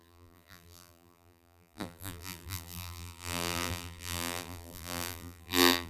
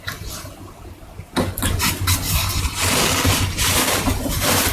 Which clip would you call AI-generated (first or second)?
first